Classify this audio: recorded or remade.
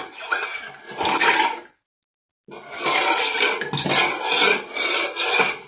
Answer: recorded